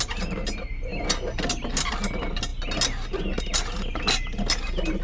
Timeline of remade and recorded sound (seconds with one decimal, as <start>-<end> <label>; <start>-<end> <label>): 0.0-5.0 recorded